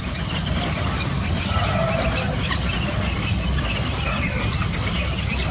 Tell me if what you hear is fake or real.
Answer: real